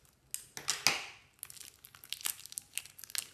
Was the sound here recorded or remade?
recorded